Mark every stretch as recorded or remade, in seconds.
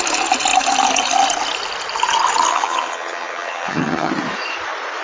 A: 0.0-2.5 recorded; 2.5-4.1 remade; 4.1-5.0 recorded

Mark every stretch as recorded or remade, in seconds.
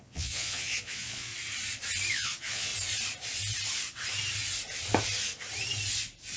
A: 0.0-1.3 remade; 1.3-2.1 recorded; 2.1-2.7 remade; 2.7-6.4 recorded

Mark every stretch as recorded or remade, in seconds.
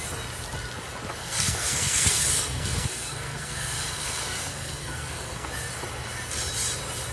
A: 0.0-1.2 recorded; 1.2-5.5 remade; 5.5-7.1 recorded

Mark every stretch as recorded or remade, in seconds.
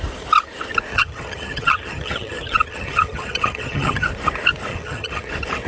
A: 0.0-0.9 recorded; 0.9-4.1 remade; 4.1-4.7 recorded; 4.7-5.3 remade; 5.3-5.7 recorded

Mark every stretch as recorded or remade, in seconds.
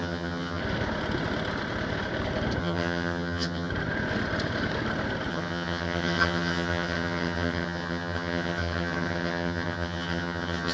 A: 0.0-0.6 remade; 0.6-2.6 recorded; 2.6-3.7 remade; 3.7-5.3 recorded; 5.3-10.7 remade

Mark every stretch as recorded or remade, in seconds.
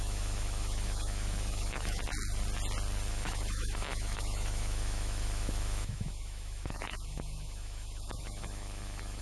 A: 0.0-2.0 remade; 2.0-3.1 recorded; 3.1-9.2 remade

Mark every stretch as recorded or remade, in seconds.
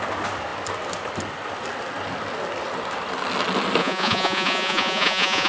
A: 0.0-3.8 recorded; 3.8-5.5 remade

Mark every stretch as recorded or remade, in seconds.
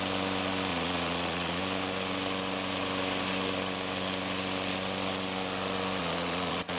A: 0.0-0.7 recorded; 0.7-1.6 remade; 1.6-6.0 recorded; 6.0-6.8 remade